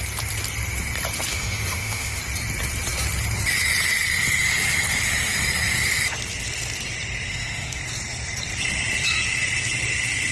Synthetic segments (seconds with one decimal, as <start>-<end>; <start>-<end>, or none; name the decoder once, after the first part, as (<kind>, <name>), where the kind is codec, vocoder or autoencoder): 1.3-2.2 (autoencoder, DAC-VAE); 7.3-7.8